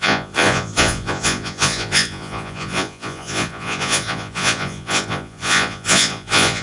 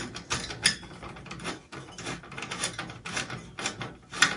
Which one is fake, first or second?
first